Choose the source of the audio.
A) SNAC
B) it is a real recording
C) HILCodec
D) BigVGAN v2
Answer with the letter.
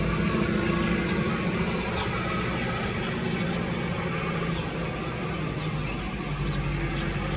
B